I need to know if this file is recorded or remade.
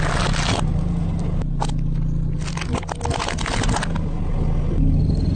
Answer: recorded